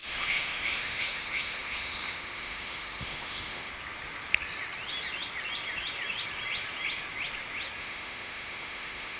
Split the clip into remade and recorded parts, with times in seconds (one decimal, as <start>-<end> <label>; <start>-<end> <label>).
0.0-3.7 remade; 3.7-7.8 recorded; 7.8-9.2 remade

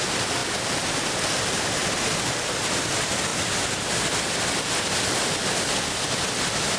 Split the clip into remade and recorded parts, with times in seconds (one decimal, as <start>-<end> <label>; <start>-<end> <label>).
0.0-6.8 recorded

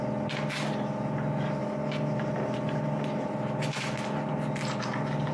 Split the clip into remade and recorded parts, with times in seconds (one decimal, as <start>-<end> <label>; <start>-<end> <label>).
0.0-5.3 recorded